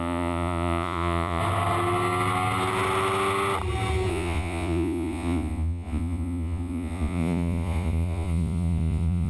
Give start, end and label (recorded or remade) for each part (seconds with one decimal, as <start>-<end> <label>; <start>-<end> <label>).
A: 0.0-1.4 remade; 1.4-4.1 recorded; 4.1-9.3 remade